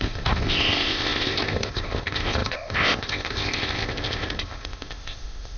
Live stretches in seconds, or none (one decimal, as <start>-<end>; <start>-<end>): none